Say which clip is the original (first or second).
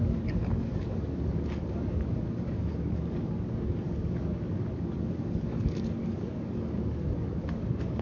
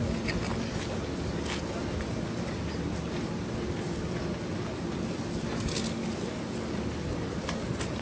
second